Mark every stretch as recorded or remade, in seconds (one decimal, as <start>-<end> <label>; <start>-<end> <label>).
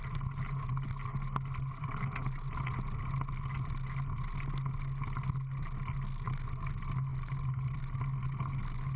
0.0-7.1 recorded; 7.1-7.8 remade; 7.8-9.0 recorded